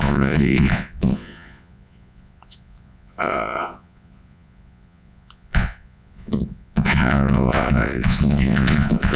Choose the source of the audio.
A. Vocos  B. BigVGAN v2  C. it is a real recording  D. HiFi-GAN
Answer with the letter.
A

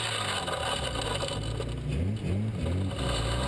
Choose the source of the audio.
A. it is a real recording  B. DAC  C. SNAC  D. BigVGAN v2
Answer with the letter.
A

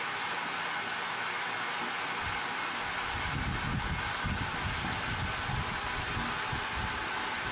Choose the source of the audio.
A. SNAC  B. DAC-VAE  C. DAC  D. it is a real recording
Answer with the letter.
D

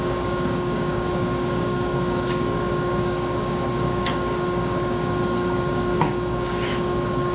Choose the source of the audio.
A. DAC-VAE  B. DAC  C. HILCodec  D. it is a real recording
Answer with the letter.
B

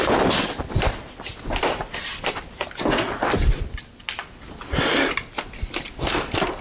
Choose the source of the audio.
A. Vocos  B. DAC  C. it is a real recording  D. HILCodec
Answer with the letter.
C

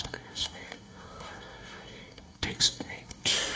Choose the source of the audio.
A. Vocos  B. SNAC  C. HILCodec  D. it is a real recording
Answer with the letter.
B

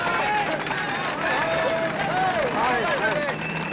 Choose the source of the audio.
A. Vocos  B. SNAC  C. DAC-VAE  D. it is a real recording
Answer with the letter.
D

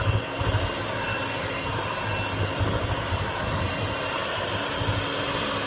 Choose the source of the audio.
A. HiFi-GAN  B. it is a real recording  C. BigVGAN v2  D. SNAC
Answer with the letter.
B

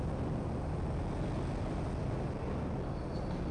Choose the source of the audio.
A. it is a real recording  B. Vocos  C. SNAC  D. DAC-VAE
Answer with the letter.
A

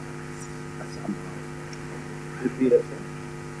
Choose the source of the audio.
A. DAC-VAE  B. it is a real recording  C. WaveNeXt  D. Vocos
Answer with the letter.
B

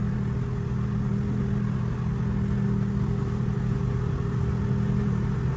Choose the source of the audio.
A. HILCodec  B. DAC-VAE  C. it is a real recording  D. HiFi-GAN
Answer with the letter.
C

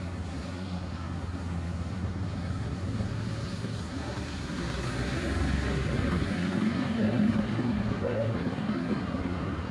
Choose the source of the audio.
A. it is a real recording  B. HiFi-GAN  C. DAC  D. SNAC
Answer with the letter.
D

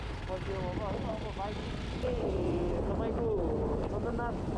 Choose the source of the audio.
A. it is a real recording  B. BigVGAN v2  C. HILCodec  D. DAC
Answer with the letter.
A